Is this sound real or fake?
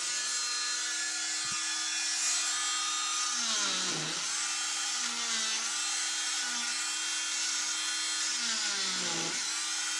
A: real